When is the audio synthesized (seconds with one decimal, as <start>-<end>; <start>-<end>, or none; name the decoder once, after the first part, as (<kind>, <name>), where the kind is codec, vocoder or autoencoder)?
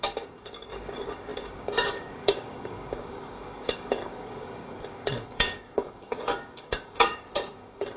0.0-8.0 (codec, DAC)